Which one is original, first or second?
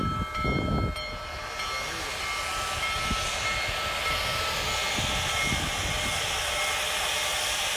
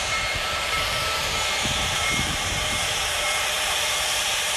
first